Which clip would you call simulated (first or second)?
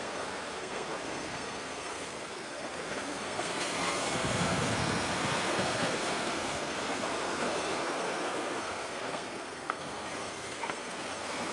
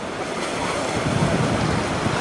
first